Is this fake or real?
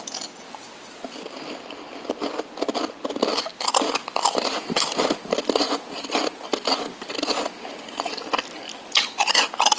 real